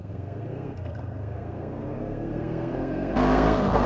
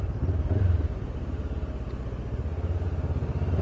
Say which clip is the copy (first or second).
first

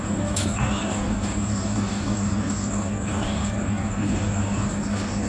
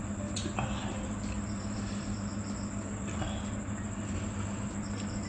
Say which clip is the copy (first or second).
first